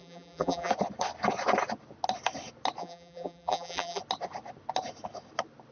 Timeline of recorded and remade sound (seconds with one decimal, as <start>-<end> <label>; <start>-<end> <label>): 0.0-0.7 remade; 0.7-2.8 recorded; 2.8-4.0 remade; 4.0-5.7 recorded